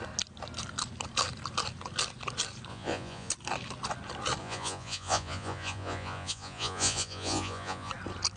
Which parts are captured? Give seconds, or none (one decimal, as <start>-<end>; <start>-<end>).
0.0-2.7; 3.3-4.4; 7.9-8.4